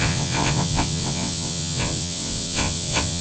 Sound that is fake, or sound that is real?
fake